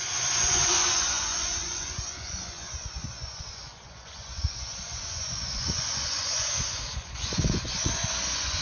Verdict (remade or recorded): remade